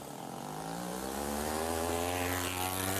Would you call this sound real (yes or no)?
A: yes